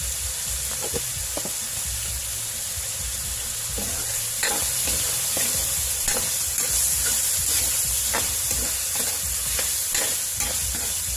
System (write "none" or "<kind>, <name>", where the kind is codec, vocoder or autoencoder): none